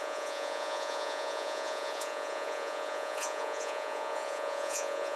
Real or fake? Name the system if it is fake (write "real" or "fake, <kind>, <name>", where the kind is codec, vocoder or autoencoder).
fake, vocoder, Vocos